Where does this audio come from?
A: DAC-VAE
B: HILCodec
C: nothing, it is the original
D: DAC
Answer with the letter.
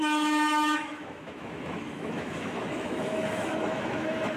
A